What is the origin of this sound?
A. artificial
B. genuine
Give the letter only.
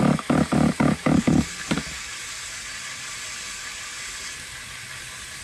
A